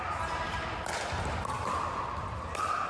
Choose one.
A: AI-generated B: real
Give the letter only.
B